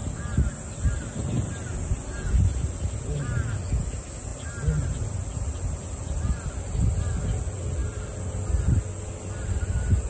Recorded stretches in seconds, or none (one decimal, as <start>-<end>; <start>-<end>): 0.0-10.1

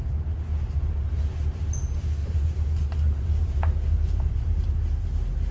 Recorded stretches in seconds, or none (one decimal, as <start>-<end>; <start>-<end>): 0.0-2.2; 4.5-5.5

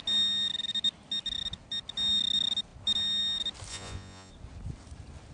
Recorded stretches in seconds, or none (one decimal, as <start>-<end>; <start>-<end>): 0.0-3.7; 4.3-5.3

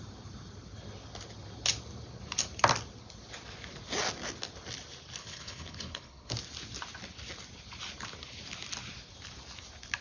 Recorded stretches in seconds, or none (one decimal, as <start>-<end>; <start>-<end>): 0.0-5.2; 6.3-10.0

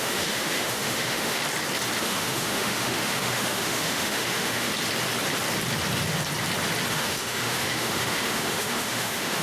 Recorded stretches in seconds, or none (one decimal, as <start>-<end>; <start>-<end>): 1.4-2.0; 4.7-6.9